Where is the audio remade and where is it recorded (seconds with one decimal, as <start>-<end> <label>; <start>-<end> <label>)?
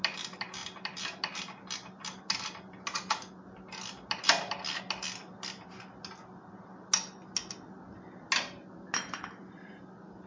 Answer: 0.0-10.3 recorded